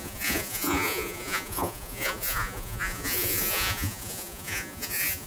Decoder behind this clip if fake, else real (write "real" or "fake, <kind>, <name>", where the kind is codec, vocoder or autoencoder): fake, vocoder, Vocos